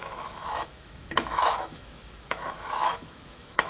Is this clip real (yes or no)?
no